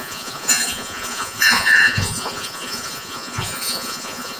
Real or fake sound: fake